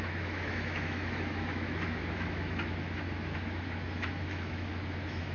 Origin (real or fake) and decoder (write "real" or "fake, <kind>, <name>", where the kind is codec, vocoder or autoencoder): fake, autoencoder, DAC-VAE